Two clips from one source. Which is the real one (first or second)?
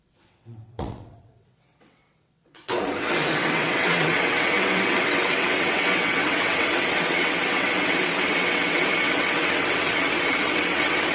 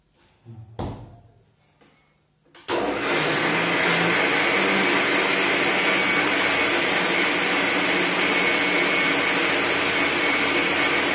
second